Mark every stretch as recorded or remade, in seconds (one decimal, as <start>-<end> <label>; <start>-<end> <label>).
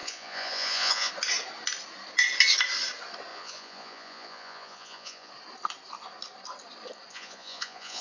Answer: 0.0-1.1 remade; 1.1-3.3 recorded; 3.3-5.3 remade; 5.3-7.1 recorded; 7.1-8.0 remade